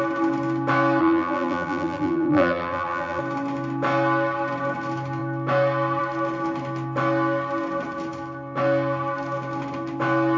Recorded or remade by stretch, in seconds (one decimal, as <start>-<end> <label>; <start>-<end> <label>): 0.0-1.0 recorded; 1.0-3.2 remade; 3.2-10.4 recorded